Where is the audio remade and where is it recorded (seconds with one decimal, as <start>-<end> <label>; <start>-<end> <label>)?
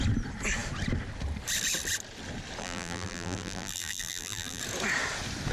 0.0-2.6 recorded; 2.6-4.6 remade; 4.6-5.5 recorded